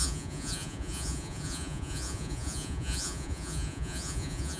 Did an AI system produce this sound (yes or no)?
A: yes